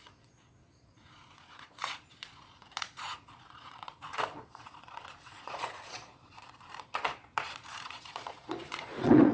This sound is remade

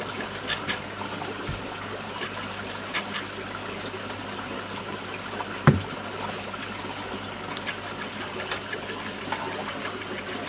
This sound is recorded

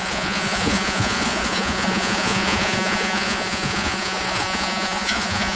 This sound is remade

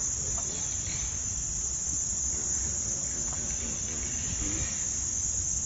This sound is recorded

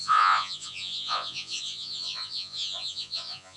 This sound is remade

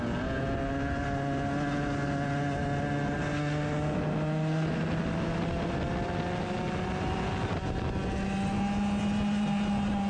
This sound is recorded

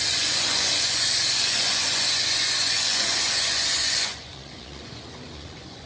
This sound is remade